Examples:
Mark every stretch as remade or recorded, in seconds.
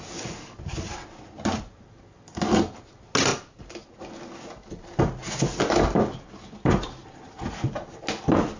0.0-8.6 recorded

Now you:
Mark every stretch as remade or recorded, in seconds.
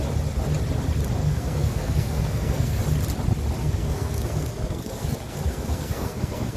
0.0-1.2 recorded; 1.2-2.8 remade; 2.8-3.6 recorded; 3.6-6.6 remade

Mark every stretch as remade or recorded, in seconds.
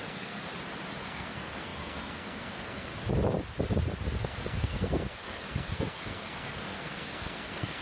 0.0-0.5 remade; 0.5-1.0 recorded; 1.0-2.9 remade; 2.9-4.2 recorded; 4.2-7.8 remade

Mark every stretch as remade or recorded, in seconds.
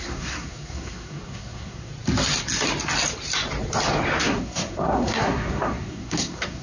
0.0-1.9 remade; 1.9-4.2 recorded; 4.2-6.6 remade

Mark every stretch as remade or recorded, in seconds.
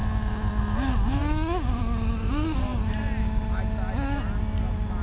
0.0-5.0 recorded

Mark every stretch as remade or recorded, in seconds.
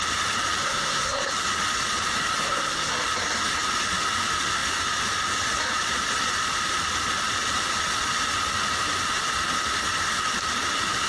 0.0-0.6 recorded; 0.6-1.3 remade; 1.3-2.4 recorded; 2.4-2.9 remade; 2.9-11.1 recorded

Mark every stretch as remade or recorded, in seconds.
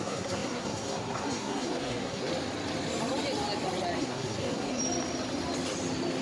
0.0-2.3 remade; 2.3-4.0 recorded; 4.0-4.8 remade; 4.8-6.2 recorded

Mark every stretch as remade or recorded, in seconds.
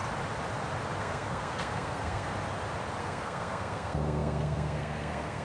0.0-1.0 recorded; 1.0-2.3 remade; 2.3-3.0 recorded; 3.0-5.4 remade